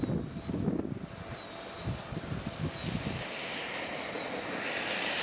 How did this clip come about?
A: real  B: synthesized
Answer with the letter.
A